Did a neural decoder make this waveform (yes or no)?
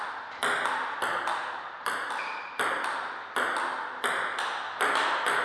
no